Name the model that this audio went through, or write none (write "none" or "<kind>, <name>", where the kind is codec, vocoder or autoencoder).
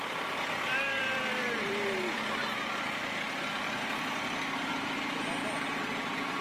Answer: vocoder, BigVGAN v2